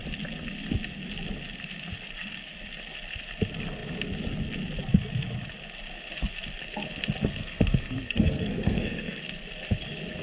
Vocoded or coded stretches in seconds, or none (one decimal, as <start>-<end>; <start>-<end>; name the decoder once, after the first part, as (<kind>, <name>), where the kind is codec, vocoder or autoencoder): 7.3-9.2 (codec, SNAC)